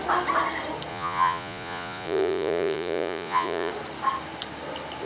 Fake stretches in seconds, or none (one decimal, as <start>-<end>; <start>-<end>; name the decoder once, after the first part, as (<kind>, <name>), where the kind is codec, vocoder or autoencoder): 0.9-3.7 (vocoder, Vocos)